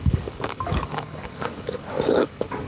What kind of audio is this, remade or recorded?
remade